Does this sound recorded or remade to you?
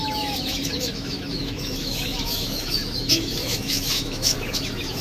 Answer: remade